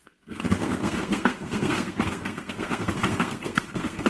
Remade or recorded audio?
remade